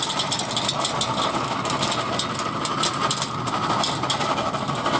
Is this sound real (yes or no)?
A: yes